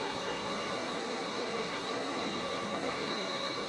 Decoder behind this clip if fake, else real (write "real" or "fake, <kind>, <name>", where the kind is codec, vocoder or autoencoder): fake, codec, SNAC